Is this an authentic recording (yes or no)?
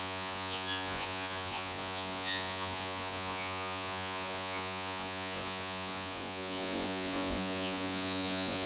no